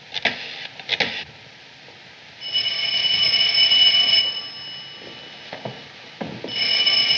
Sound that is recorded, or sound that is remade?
recorded